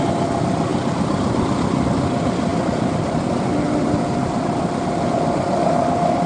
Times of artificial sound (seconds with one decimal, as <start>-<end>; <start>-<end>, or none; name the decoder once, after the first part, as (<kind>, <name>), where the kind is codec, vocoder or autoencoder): none